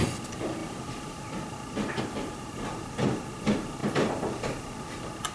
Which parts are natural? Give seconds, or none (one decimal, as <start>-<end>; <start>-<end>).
0.0-0.6; 2.0-5.3